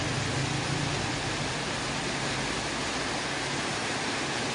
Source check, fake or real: real